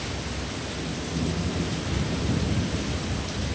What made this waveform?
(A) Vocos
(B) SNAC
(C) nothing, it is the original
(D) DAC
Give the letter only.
C